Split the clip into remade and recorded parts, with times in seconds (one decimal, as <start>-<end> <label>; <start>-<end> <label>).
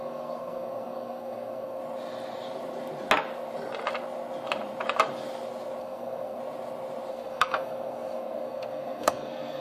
0.0-1.8 remade; 1.8-5.8 recorded; 5.8-6.4 remade; 6.4-7.1 recorded; 7.1-9.6 remade